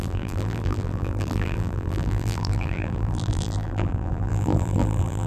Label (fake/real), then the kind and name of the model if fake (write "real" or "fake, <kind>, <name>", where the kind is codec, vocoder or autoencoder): fake, vocoder, BigVGAN v2